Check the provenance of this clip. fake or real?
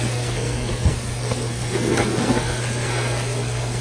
fake